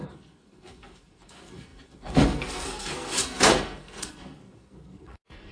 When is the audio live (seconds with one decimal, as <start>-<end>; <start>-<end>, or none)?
none

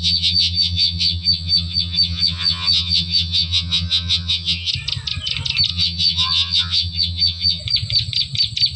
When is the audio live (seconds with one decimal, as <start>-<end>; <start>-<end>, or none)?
4.7-5.7; 7.6-8.8

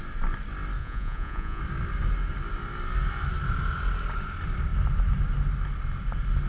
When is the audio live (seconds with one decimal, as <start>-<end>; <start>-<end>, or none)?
0.0-0.8; 1.6-6.5

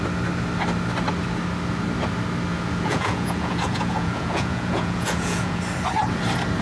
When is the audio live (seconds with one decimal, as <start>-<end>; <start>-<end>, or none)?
0.0-2.5; 5.6-6.6

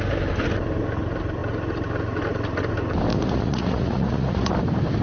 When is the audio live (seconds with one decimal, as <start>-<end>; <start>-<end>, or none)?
0.0-3.1; 4.5-5.0

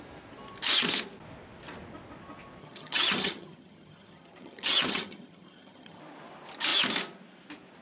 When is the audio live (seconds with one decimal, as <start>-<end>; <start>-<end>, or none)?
0.0-2.6; 6.0-7.8

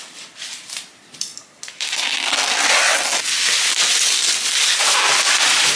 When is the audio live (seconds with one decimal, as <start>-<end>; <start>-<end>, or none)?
0.0-5.8